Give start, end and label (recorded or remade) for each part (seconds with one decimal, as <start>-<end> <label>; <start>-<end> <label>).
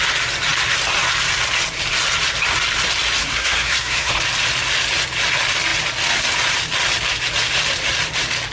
0.0-3.2 recorded; 3.2-4.1 remade; 4.1-8.5 recorded